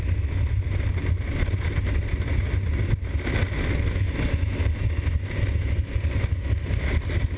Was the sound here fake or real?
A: real